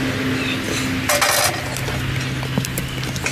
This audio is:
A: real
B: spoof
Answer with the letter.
A